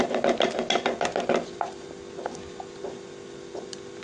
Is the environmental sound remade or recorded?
recorded